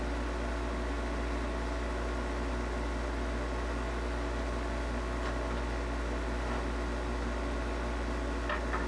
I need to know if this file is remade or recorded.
recorded